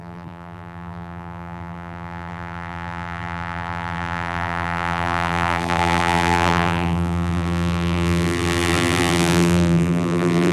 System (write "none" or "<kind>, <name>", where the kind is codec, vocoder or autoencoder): vocoder, BigVGAN v2